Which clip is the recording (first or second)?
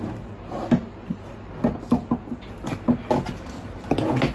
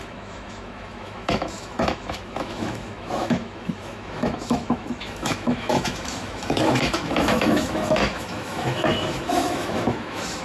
first